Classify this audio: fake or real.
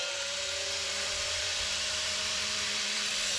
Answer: fake